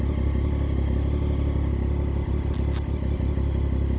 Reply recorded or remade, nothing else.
recorded